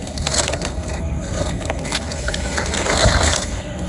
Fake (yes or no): yes